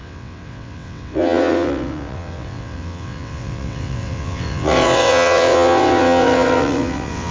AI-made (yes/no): yes